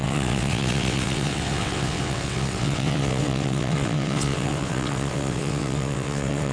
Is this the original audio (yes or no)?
no